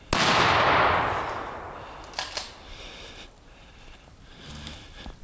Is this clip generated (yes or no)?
no